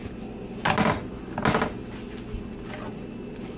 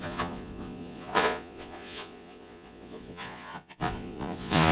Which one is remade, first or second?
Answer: second